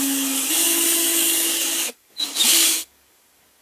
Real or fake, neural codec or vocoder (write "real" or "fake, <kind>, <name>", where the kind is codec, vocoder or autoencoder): fake, codec, DAC